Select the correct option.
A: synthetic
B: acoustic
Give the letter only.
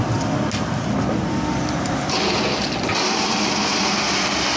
B